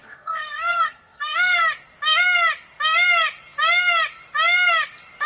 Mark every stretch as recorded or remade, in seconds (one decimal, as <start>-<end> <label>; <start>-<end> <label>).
0.0-1.6 remade; 1.6-5.3 recorded